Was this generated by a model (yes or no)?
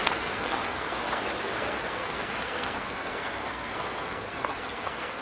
yes